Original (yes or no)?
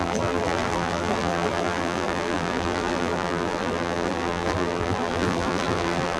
no